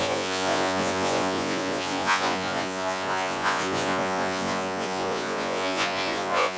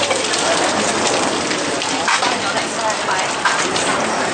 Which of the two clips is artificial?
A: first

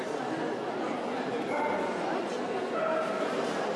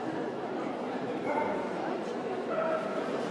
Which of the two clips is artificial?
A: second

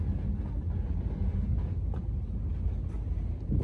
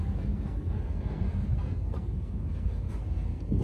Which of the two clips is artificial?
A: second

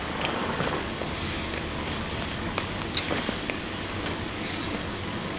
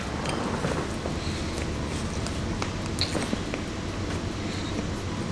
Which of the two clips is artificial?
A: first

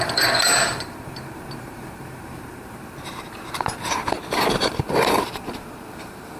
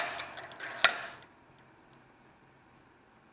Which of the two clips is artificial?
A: first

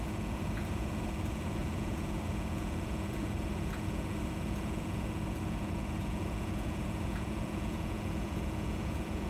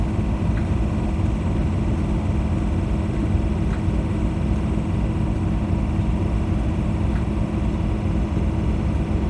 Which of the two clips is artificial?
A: first